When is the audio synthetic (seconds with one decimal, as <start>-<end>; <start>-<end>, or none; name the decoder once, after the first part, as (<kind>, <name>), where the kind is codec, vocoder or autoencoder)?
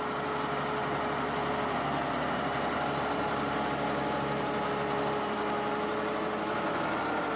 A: none